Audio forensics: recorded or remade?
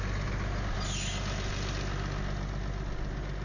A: recorded